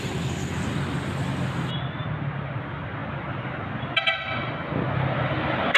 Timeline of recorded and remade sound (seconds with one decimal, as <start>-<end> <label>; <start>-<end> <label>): 0.0-5.8 recorded